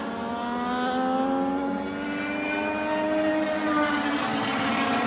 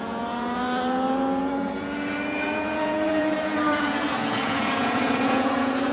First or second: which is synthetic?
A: second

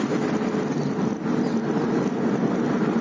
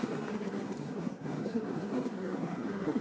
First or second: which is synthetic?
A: second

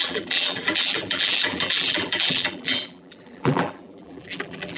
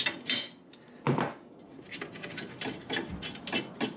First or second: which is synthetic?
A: first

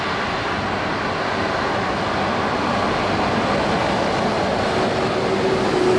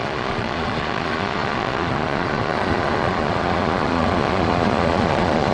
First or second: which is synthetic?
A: second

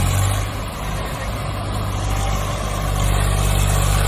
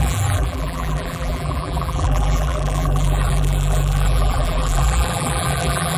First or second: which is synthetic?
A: second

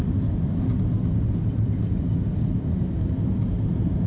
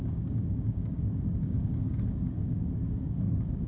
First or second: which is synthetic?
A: second